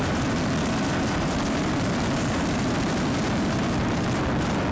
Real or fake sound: fake